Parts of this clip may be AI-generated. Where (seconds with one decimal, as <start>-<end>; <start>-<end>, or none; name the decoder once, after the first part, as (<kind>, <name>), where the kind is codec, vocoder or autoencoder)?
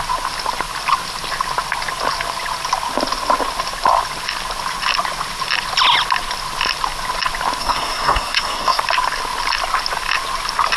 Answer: 7.6-8.8 (codec, SNAC)